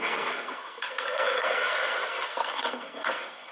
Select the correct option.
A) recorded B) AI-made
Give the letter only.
B